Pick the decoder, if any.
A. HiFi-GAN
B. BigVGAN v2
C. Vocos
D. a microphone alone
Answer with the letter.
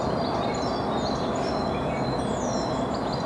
D